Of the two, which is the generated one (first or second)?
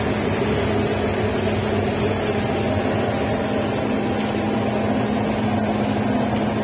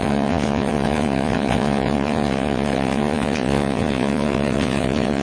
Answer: second